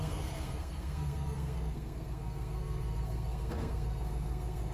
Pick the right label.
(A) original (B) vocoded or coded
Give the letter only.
B